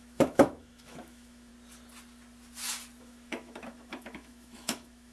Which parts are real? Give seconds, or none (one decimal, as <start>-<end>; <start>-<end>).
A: 1.5-3.0